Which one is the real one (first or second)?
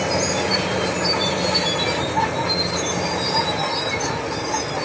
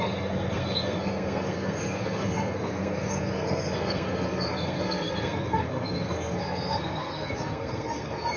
first